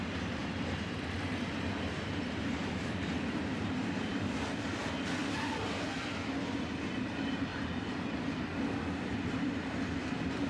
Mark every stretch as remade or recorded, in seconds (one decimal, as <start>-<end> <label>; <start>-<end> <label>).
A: 0.0-7.5 remade; 7.5-8.1 recorded; 8.1-8.5 remade; 8.5-9.1 recorded; 9.1-10.5 remade